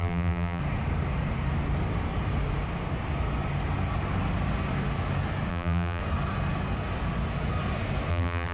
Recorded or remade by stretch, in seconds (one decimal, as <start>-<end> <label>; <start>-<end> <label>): 0.0-0.6 remade; 0.6-5.5 recorded; 5.5-6.0 remade; 6.0-8.1 recorded; 8.1-8.5 remade